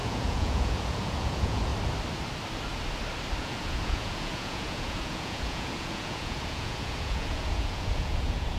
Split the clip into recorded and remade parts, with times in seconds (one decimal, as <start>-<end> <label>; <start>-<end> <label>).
0.0-1.7 remade; 1.7-3.4 recorded; 3.4-8.6 remade